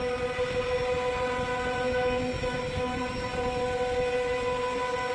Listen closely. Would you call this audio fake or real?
real